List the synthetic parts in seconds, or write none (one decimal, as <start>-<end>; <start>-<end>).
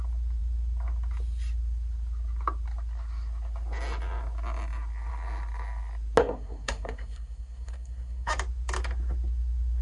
6.2-8.3